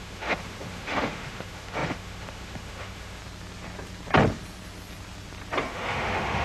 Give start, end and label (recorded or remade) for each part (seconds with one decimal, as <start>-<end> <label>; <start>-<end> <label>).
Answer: 0.0-3.2 remade; 3.2-5.7 recorded; 5.7-6.4 remade